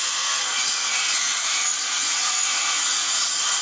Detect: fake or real fake